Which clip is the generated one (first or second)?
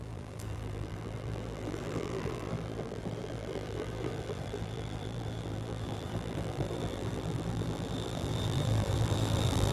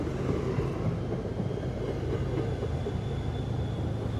first